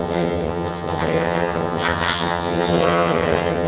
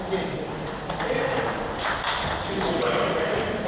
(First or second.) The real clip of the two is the second